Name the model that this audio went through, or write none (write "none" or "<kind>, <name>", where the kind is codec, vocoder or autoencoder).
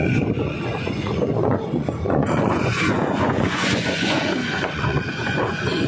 vocoder, Vocos